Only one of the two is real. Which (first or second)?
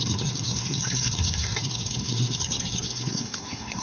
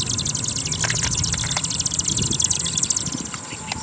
second